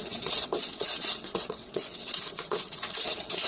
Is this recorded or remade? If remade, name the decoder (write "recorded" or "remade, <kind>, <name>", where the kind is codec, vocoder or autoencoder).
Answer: remade, vocoder, WaveNeXt